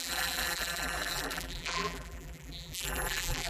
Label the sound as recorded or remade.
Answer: remade